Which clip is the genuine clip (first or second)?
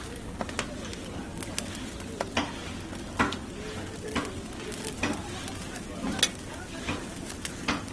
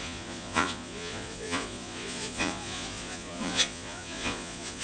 first